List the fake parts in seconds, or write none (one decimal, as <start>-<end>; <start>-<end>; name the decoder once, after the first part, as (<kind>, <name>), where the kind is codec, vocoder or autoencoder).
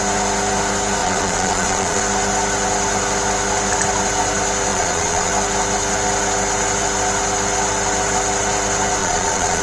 1.0-2.0 (vocoder, Vocos); 4.7-5.3; 9.0-9.6